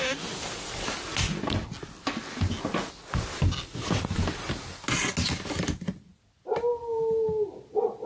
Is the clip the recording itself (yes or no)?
yes